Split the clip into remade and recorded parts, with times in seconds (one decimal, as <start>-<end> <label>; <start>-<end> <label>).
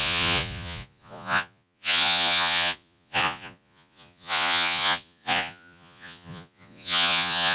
0.0-7.5 remade